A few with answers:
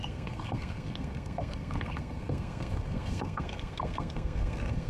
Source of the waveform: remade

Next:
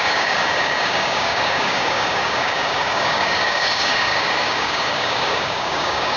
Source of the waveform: remade